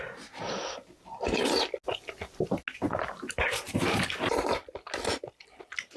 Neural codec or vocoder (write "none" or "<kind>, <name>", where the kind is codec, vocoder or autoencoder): none